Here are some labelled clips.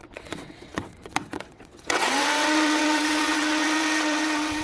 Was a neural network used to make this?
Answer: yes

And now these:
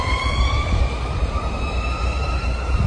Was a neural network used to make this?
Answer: yes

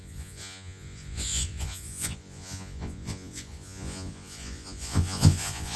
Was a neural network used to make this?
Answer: yes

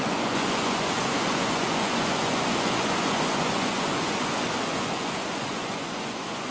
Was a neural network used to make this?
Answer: yes